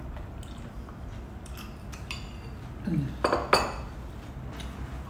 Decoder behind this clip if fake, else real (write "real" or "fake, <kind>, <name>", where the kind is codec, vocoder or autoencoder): real